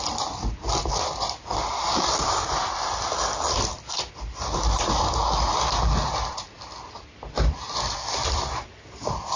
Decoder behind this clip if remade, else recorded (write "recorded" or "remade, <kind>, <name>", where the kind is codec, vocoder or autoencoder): recorded